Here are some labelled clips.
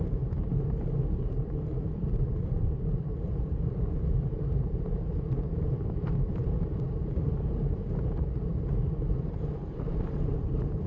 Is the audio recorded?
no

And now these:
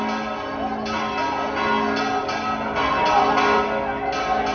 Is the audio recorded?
yes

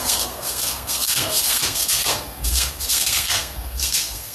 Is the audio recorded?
no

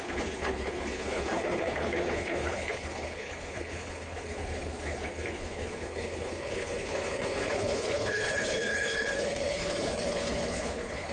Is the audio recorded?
no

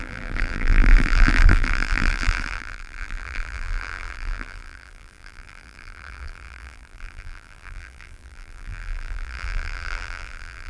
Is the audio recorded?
no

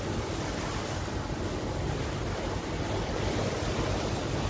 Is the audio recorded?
yes